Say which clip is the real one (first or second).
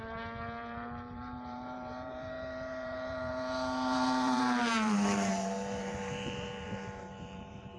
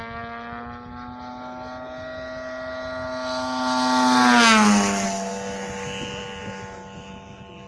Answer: second